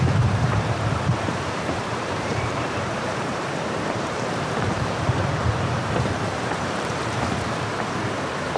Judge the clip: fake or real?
fake